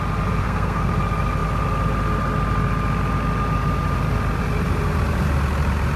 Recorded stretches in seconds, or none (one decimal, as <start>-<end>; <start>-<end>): 0.0-0.4; 0.9-6.0